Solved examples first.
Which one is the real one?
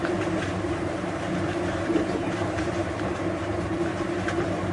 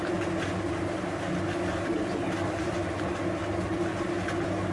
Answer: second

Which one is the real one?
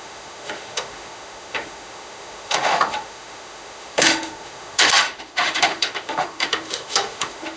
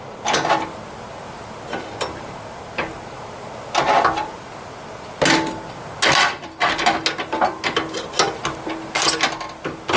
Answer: second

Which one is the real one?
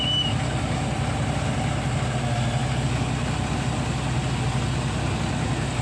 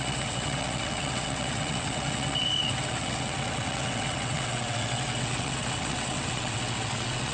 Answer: first